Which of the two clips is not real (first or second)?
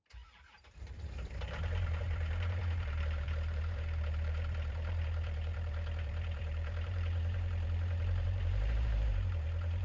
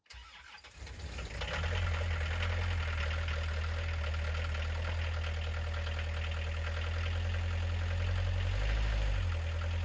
first